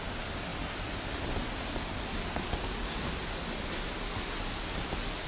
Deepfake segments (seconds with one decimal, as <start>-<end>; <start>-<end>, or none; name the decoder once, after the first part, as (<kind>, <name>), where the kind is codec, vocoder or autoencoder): none